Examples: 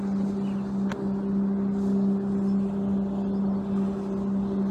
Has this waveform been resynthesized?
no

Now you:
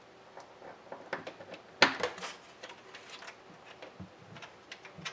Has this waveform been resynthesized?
no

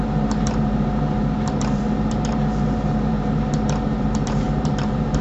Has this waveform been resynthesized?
yes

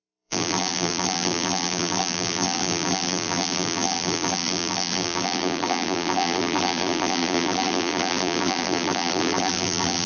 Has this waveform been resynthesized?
yes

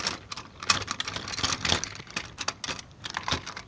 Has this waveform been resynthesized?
no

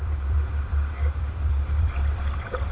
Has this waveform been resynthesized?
yes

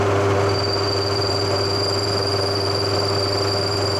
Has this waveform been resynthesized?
no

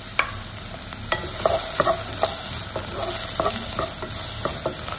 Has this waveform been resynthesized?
no